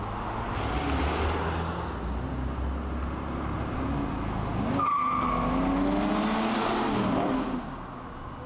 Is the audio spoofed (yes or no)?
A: no